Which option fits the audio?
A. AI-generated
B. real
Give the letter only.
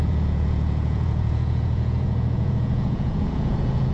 A